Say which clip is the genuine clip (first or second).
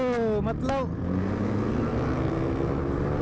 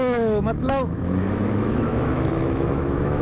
first